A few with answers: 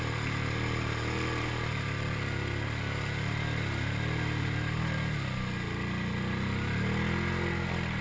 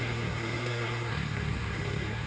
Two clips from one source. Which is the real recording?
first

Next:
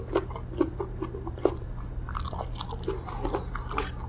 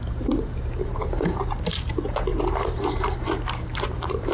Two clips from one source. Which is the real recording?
first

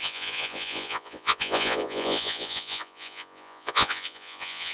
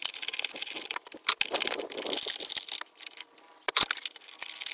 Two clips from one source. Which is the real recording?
second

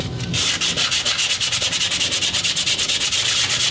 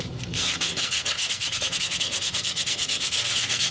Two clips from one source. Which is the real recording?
first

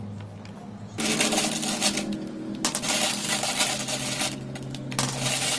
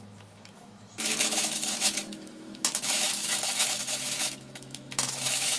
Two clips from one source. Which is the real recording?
first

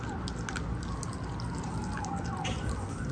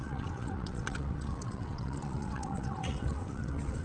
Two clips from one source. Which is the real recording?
first